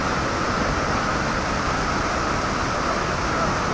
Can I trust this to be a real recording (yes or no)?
yes